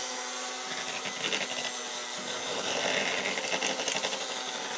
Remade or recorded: recorded